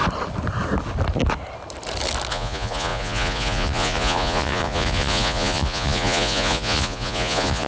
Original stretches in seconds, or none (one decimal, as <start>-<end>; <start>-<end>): 0.0-2.3